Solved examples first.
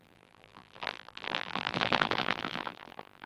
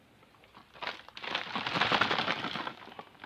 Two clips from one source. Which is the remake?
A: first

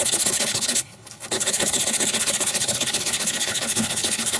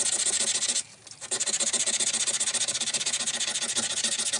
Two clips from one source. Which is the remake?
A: first